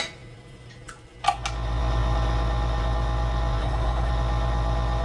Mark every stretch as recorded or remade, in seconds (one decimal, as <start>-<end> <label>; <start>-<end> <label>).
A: 0.0-3.6 recorded; 3.6-4.1 remade; 4.1-5.0 recorded